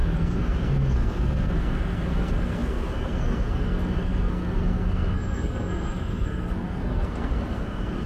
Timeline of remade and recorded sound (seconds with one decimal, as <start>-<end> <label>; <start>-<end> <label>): 0.0-8.1 remade